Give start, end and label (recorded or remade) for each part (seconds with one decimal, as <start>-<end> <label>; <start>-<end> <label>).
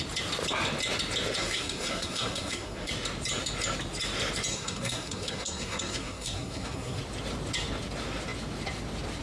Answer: 0.0-1.4 recorded; 1.4-2.9 remade; 2.9-4.5 recorded; 4.5-7.0 remade; 7.0-9.2 recorded